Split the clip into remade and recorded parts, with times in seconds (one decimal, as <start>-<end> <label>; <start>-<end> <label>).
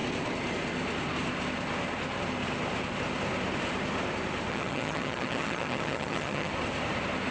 0.0-4.5 recorded; 4.5-6.5 remade; 6.5-7.3 recorded